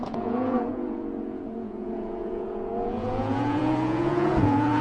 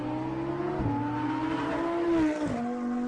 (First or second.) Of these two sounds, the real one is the second